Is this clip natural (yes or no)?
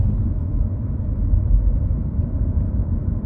no